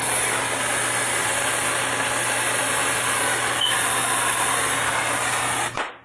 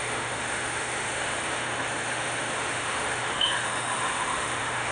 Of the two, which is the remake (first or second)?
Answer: second